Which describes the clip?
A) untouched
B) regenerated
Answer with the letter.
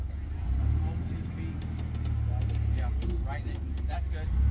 A